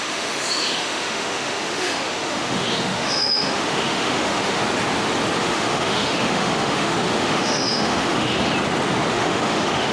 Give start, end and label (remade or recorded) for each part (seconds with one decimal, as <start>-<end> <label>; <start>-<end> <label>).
0.0-4.6 remade; 4.6-5.4 recorded; 5.4-8.5 remade; 8.5-9.1 recorded; 9.1-9.9 remade